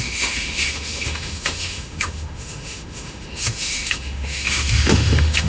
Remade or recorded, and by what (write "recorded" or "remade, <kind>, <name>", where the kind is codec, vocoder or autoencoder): remade, autoencoder, DAC-VAE